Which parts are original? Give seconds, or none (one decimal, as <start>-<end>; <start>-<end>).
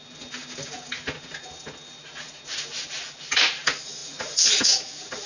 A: 0.0-5.3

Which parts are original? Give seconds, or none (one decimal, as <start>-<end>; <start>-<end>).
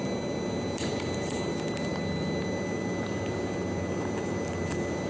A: 0.0-5.1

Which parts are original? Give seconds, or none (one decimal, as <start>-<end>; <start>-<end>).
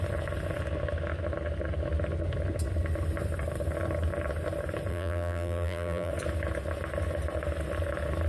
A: 0.0-4.9; 6.1-8.3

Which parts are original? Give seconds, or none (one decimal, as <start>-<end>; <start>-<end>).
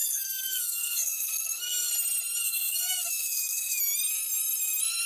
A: 1.9-2.4; 3.8-5.1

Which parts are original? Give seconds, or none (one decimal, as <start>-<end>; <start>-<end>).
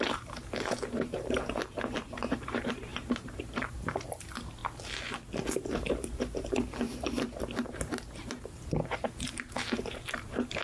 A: 4.6-5.6